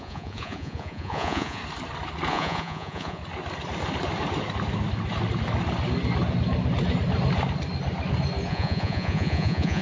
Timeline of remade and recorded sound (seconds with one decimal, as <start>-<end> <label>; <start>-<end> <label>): 0.0-1.6 remade; 1.6-2.3 recorded; 2.3-3.2 remade; 3.2-8.5 recorded; 8.5-9.8 remade